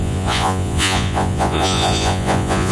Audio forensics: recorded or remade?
remade